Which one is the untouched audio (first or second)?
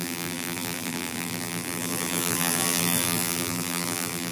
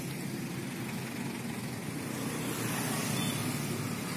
second